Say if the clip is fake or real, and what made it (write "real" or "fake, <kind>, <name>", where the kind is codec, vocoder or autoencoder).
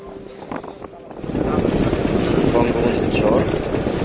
real